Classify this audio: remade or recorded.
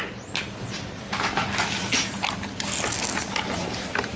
recorded